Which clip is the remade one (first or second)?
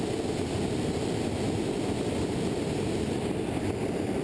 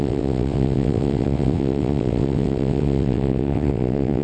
second